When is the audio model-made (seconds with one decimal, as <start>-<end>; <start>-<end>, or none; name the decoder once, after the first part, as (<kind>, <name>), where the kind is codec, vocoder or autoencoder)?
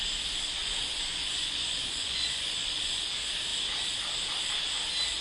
0.6-3.0 (vocoder, Vocos)